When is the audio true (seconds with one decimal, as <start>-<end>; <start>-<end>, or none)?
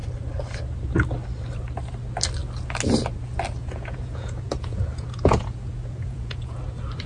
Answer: 0.0-3.6; 6.6-7.1